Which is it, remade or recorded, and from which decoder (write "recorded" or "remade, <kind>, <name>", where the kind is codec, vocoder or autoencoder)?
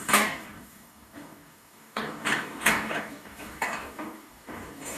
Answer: remade, codec, DAC